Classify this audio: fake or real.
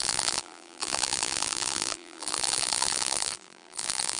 fake